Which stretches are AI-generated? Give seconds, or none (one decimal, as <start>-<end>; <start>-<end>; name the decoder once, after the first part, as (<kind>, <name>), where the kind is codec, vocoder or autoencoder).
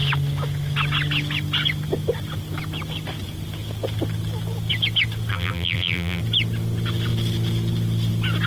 5.3-6.2 (vocoder, BigVGAN v2)